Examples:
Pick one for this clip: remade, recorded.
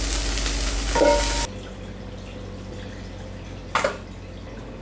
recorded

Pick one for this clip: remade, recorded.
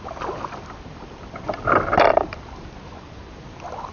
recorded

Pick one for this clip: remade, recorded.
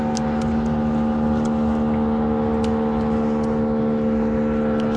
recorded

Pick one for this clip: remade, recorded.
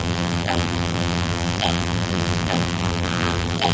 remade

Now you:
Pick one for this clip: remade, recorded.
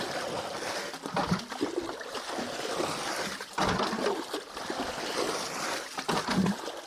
recorded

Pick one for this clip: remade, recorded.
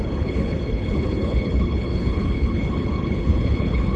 remade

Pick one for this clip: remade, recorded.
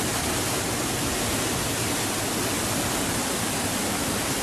recorded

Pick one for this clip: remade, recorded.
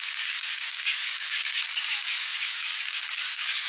remade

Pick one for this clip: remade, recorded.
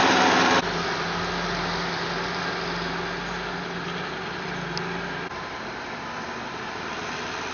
recorded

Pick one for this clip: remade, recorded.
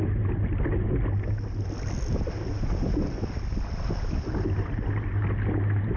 recorded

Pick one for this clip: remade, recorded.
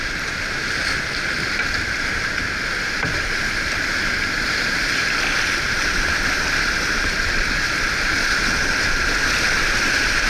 recorded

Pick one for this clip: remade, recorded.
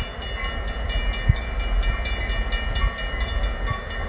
recorded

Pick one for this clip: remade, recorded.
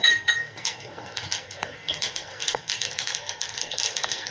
remade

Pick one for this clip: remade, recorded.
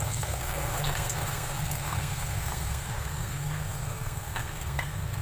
remade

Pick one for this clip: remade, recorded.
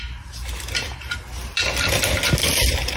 recorded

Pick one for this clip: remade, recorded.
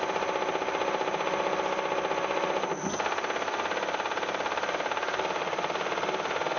recorded